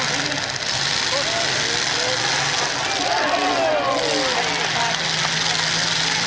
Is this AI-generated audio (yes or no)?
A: no